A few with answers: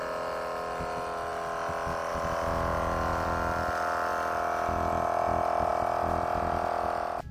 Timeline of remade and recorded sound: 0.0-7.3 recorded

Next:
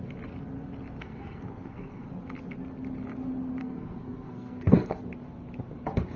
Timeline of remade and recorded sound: 0.0-1.0 recorded; 1.0-2.1 remade; 2.1-3.6 recorded; 3.6-5.0 remade; 5.0-6.2 recorded

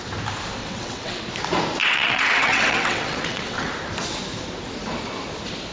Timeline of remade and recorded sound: 0.0-0.6 recorded; 0.6-1.2 remade; 1.2-1.8 recorded; 1.8-3.7 remade; 3.7-5.7 recorded